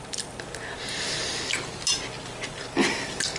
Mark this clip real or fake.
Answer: real